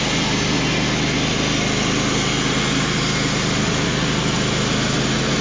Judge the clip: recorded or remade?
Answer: recorded